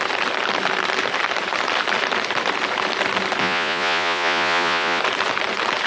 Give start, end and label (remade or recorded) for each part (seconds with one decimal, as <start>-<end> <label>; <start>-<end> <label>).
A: 0.0-3.4 recorded; 3.4-5.0 remade; 5.0-5.9 recorded